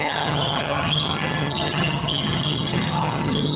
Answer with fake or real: fake